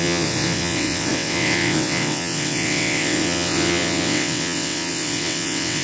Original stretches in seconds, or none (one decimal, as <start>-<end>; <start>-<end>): none